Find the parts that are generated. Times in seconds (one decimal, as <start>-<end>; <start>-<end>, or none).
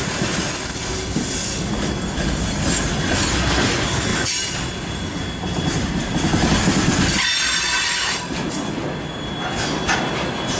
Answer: none